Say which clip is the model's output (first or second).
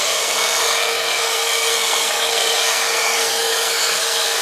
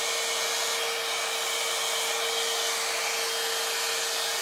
first